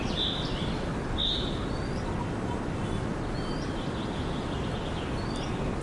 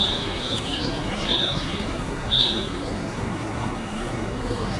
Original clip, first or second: first